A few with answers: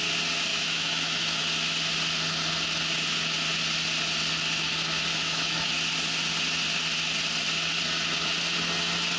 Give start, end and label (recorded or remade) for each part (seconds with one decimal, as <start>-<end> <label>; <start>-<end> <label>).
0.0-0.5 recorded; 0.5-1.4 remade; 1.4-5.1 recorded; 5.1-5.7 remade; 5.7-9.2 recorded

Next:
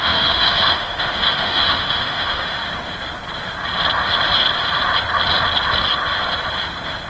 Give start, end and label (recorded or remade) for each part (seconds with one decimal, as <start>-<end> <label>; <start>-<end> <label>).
0.0-2.6 remade; 2.6-7.1 recorded

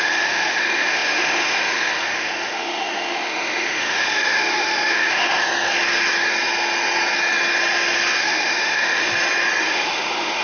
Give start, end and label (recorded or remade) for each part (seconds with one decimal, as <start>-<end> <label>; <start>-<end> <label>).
0.0-5.5 remade; 5.5-8.2 recorded; 8.2-9.1 remade; 9.1-9.6 recorded; 9.6-10.4 remade

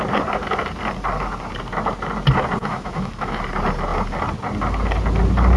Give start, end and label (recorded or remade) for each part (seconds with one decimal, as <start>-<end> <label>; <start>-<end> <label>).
0.0-2.6 recorded; 2.6-3.4 remade; 3.4-5.6 recorded

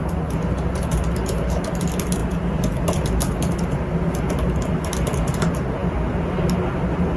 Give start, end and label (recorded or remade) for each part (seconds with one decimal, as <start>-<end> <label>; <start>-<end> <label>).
0.0-7.2 recorded

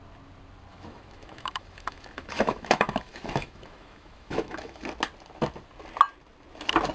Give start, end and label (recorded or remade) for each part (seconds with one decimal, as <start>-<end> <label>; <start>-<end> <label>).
0.0-0.7 recorded; 0.7-4.8 remade; 4.8-6.9 recorded